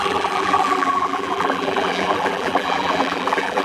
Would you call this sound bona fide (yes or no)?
no